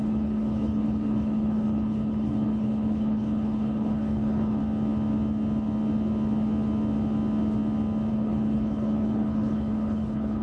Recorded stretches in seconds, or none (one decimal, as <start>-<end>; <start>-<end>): 4.6-8.1